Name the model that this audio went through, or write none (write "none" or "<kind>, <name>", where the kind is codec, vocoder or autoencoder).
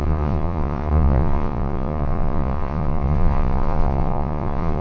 vocoder, Vocos